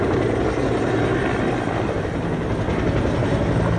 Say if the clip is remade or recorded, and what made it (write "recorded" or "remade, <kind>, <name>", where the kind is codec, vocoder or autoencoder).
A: recorded